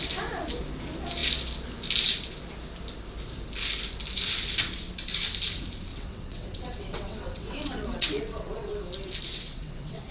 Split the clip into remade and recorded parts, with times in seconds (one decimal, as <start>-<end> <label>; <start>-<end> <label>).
0.0-5.9 recorded; 5.9-8.7 remade; 8.7-9.3 recorded; 9.3-10.1 remade